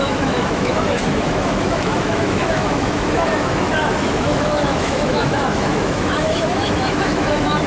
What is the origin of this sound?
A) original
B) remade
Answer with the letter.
B